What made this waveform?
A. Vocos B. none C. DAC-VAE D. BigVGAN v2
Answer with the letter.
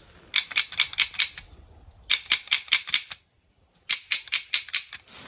B